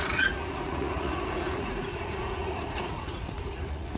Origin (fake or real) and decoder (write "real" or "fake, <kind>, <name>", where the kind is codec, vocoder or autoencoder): fake, vocoder, Vocos